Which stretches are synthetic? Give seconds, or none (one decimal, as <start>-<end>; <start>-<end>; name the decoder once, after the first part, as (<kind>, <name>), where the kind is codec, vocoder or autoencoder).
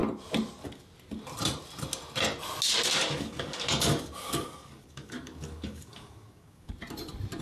3.0-6.7 (codec, DAC)